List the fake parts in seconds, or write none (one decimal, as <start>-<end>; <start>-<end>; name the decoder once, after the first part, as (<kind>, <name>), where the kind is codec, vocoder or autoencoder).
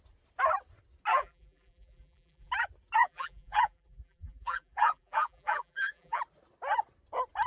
1.1-2.5 (vocoder, BigVGAN v2); 3.0-6.2